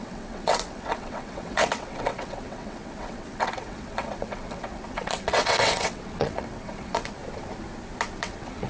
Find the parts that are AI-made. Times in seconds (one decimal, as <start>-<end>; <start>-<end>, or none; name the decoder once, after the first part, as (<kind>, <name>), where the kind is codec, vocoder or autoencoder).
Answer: 0.0-7.2 (vocoder, WaveNeXt); 8.2-8.7